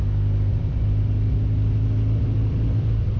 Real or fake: fake